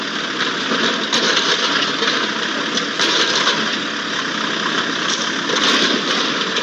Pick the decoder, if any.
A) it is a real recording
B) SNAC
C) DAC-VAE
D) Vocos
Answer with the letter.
A